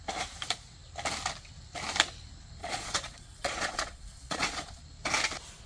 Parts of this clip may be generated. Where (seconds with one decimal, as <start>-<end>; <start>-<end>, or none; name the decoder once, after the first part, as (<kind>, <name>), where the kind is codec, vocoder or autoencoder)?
2.6-4.8 (vocoder, Vocos)